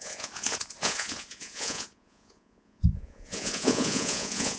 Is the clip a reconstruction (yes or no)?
yes